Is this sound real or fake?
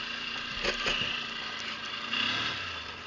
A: real